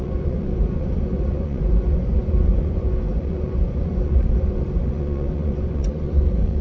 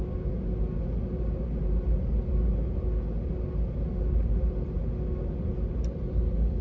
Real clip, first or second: second